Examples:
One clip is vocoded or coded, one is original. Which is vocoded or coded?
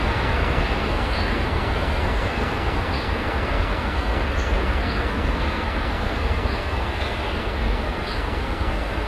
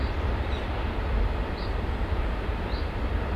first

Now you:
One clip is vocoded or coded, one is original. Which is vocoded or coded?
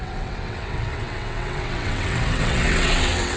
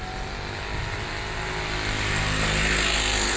first